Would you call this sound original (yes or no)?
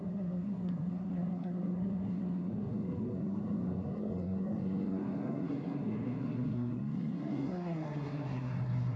no